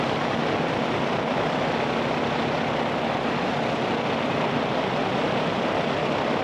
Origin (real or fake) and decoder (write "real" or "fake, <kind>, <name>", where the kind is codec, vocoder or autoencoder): real